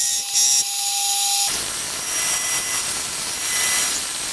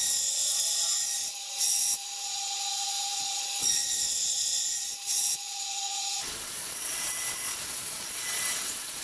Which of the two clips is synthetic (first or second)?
second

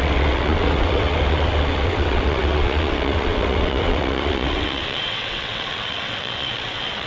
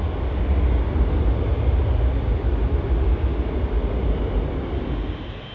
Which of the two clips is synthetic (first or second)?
first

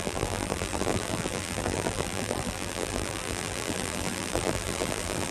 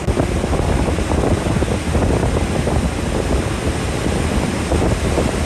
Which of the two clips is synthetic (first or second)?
first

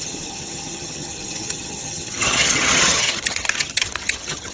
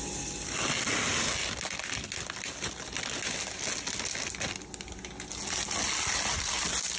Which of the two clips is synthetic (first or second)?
first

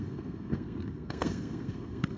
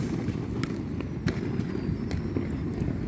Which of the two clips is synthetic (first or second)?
first